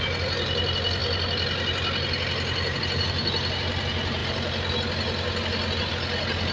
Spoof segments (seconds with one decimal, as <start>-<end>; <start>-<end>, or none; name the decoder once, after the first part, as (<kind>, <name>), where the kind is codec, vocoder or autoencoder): none